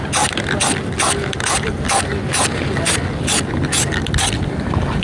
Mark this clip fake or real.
real